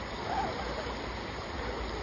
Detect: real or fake real